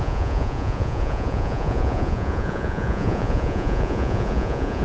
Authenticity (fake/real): fake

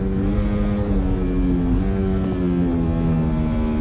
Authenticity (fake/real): real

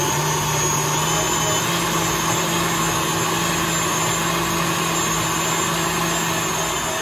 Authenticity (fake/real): real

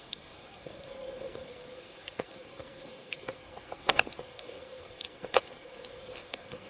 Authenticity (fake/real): fake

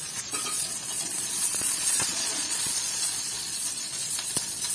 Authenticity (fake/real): fake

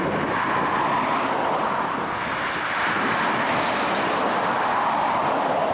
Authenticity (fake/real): real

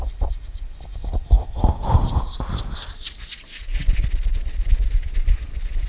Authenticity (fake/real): real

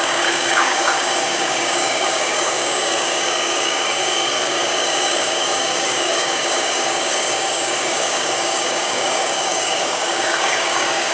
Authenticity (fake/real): fake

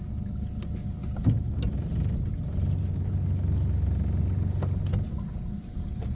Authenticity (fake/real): real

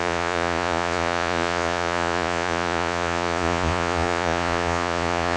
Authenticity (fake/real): fake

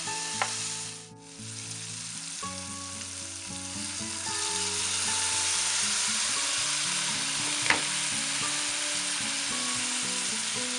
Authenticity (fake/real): real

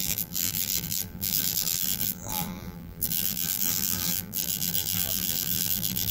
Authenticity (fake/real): fake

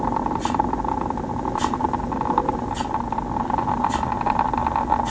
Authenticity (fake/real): real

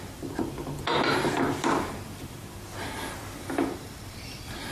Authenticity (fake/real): fake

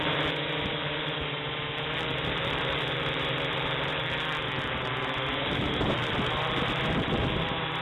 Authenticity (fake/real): fake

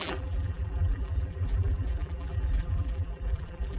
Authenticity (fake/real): fake